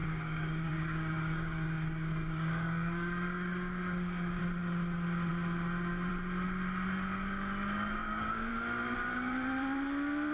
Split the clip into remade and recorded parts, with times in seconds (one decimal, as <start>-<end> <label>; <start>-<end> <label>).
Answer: 0.0-4.4 remade; 4.4-8.0 recorded; 8.0-8.5 remade; 8.5-10.3 recorded